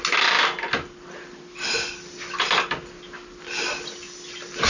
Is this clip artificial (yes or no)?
no